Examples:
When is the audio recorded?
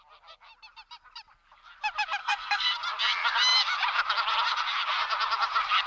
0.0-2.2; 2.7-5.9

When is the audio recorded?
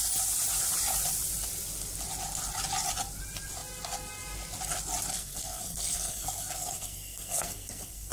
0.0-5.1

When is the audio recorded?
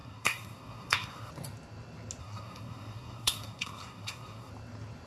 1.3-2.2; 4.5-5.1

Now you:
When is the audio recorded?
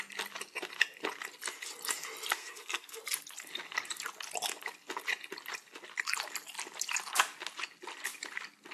0.0-2.3; 3.0-8.7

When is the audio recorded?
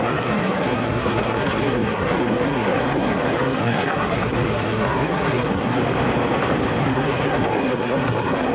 5.8-6.8